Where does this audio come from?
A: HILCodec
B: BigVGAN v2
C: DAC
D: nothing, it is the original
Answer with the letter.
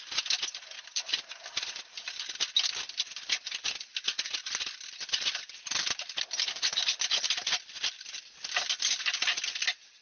D